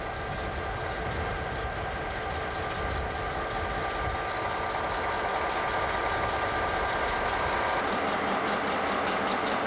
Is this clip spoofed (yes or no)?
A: no